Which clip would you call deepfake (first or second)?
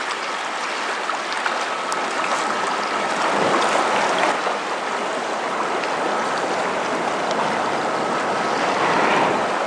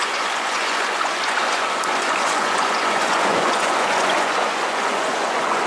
second